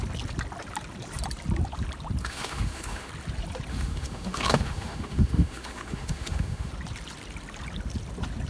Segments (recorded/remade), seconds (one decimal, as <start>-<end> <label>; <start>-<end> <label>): 0.0-2.2 recorded; 2.2-3.1 remade; 3.1-3.7 recorded; 3.7-6.7 remade; 6.7-8.5 recorded